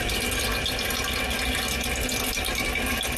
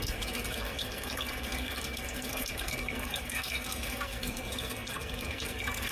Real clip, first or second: first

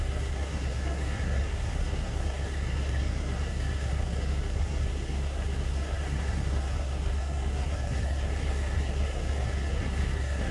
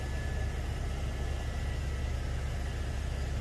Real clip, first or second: second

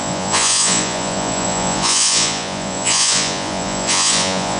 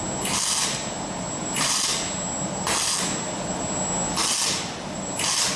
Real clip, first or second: second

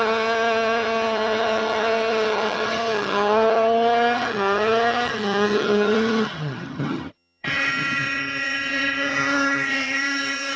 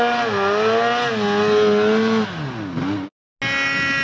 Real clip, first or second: second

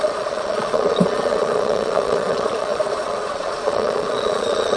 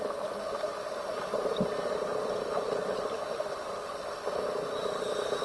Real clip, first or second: second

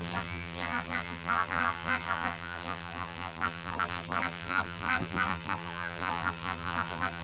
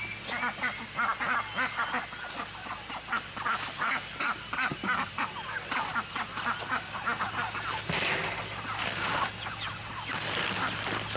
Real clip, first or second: second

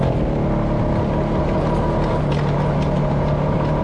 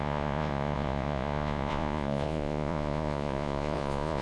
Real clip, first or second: first